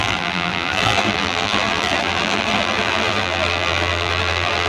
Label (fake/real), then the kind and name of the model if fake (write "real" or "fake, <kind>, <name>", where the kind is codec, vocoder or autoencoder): fake, vocoder, BigVGAN v2